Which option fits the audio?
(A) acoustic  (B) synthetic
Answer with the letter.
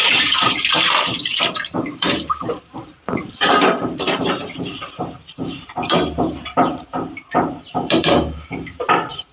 B